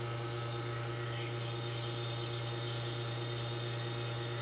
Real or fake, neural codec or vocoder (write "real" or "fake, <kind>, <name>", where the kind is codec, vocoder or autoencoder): real